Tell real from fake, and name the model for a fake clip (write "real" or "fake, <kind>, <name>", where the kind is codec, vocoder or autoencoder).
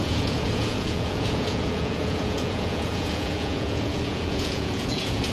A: fake, vocoder, Vocos